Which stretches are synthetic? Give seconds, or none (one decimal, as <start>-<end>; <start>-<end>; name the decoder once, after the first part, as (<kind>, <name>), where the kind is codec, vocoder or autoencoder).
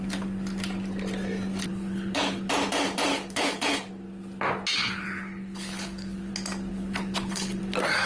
1.7-2.5 (codec, HILCodec); 3.1-3.9; 4.8-6.3; 6.7-7.6